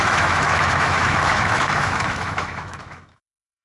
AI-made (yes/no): yes